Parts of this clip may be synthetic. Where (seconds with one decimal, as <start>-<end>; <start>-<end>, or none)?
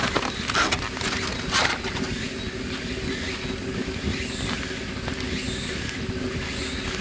none